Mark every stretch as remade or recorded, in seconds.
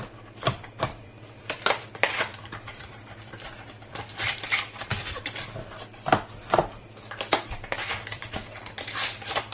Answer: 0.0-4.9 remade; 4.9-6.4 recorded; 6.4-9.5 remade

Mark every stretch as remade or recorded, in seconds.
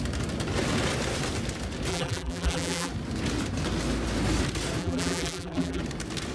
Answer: 0.0-1.9 recorded; 1.9-2.9 remade; 2.9-4.8 recorded; 4.8-5.8 remade; 5.8-6.3 recorded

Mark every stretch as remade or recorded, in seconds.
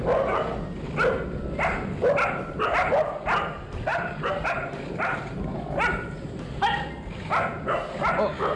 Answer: 0.0-3.9 recorded; 3.9-5.5 remade; 5.5-8.6 recorded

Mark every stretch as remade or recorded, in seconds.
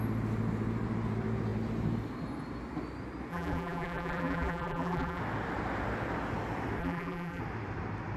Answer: 0.0-3.3 recorded; 3.3-5.2 remade; 5.2-6.8 recorded; 6.8-7.4 remade; 7.4-8.2 recorded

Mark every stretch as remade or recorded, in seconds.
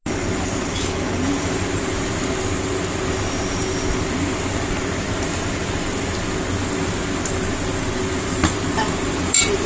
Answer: 0.0-9.7 recorded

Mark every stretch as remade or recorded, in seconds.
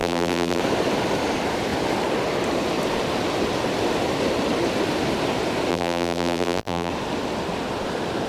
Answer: 0.0-0.6 remade; 0.6-5.7 recorded; 5.7-6.9 remade; 6.9-8.3 recorded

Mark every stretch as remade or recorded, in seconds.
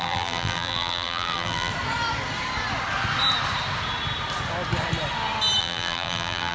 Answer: 0.0-1.7 remade; 1.7-5.6 recorded; 5.6-6.5 remade